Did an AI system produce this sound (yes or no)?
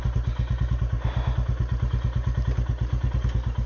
no